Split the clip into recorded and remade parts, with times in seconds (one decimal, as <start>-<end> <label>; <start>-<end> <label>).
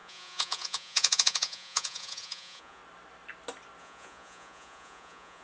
0.0-2.8 remade; 2.8-3.8 recorded; 3.8-5.4 remade